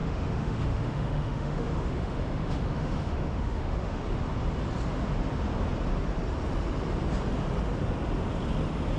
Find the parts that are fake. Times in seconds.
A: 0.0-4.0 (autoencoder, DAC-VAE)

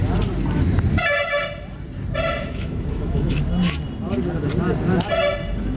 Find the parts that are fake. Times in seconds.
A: 2.4-3.4 (autoencoder, DAC-VAE)

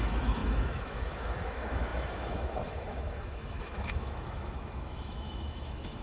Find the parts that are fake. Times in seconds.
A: 0.0-6.0 (autoencoder, DAC-VAE)